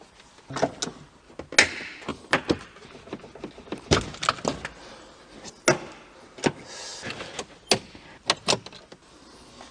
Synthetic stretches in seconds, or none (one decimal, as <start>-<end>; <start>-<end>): none